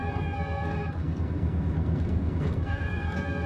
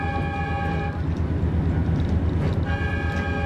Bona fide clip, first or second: second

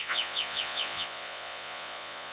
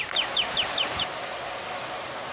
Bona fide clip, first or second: second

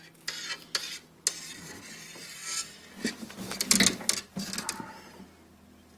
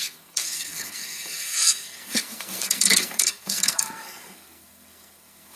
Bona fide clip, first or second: first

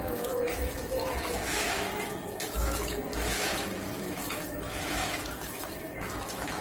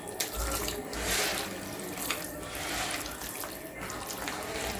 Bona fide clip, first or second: second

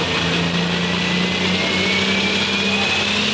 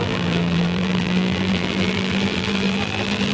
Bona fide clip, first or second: first